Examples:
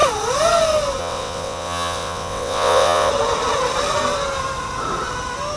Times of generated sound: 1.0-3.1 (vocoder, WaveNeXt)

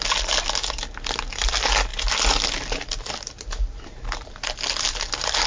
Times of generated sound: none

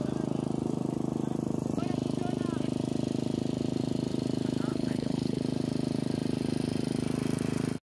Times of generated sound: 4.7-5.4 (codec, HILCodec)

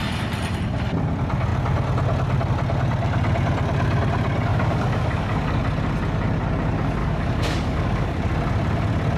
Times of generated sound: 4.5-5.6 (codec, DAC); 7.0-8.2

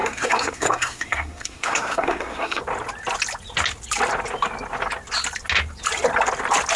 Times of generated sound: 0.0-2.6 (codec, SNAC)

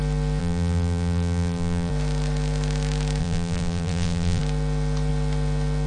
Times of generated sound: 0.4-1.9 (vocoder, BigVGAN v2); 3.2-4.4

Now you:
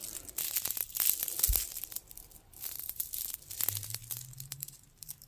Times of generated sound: 4.5-5.3 (vocoder, BigVGAN v2)